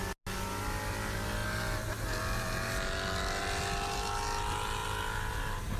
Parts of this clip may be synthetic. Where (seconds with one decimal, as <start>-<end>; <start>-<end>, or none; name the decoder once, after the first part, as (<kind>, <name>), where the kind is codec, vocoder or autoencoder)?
none